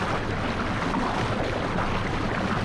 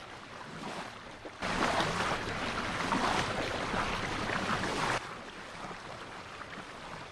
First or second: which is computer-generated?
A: second